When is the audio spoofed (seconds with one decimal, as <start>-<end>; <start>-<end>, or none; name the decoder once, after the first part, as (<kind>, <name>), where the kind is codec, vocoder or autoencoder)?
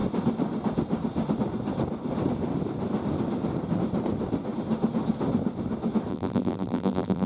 6.1-7.3 (vocoder, BigVGAN v2)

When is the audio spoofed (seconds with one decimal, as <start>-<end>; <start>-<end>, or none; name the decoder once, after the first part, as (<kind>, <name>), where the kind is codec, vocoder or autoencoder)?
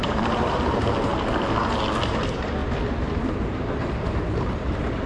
0.0-1.1 (vocoder, BigVGAN v2); 2.1-2.6; 3.2-5.1